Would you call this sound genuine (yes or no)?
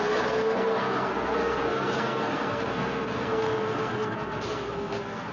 no